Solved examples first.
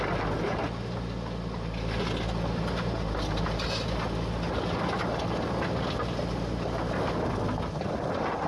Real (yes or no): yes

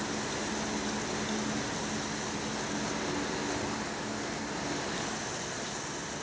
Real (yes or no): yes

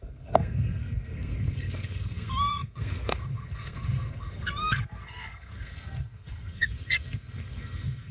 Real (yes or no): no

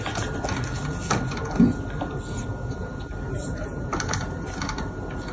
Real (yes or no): yes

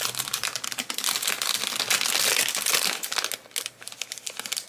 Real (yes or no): yes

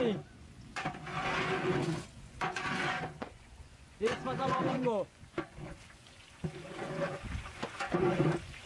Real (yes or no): no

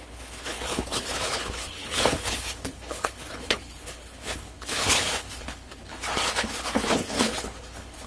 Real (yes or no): no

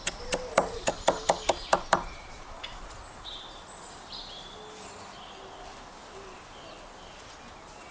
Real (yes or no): yes